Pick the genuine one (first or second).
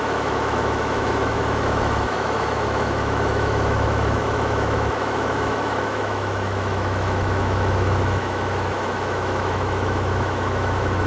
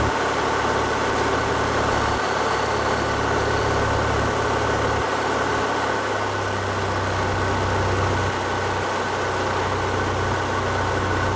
second